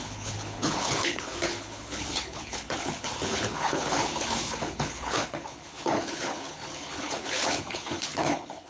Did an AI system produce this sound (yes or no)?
yes